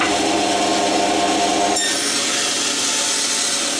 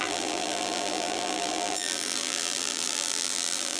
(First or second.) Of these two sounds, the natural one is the first